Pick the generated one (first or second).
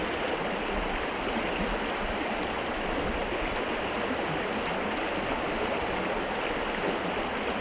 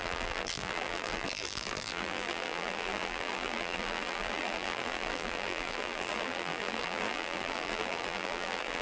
second